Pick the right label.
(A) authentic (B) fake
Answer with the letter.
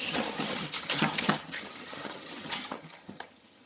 B